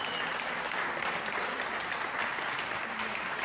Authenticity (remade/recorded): recorded